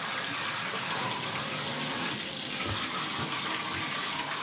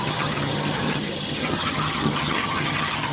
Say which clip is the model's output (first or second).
second